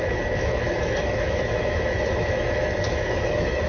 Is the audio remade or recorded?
remade